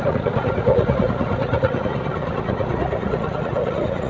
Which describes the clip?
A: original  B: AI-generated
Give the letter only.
B